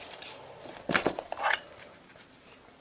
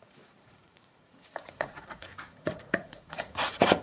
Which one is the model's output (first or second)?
second